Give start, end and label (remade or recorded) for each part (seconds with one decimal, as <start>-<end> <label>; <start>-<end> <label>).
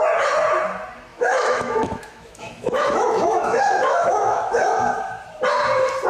0.0-1.1 recorded; 1.1-4.8 remade; 4.8-6.1 recorded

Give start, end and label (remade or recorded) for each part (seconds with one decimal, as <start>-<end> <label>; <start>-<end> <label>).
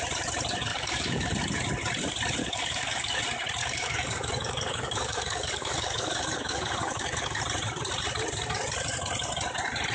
0.0-0.7 recorded; 0.7-1.3 remade; 1.3-2.4 recorded; 2.4-3.2 remade; 3.2-3.6 recorded; 3.6-7.4 remade; 7.4-9.9 recorded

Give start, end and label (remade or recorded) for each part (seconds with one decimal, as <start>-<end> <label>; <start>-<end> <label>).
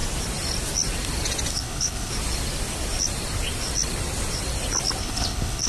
0.0-1.5 recorded; 1.5-2.1 remade; 2.1-5.0 recorded; 5.0-5.7 remade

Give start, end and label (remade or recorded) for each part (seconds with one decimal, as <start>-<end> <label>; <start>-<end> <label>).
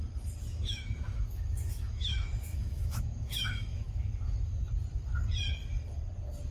0.0-0.5 recorded; 0.5-4.1 remade; 4.1-6.5 recorded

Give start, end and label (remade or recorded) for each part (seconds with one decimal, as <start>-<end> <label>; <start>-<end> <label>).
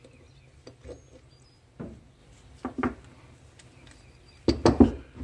0.0-5.2 recorded